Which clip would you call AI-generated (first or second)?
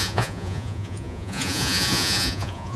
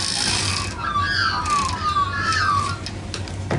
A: first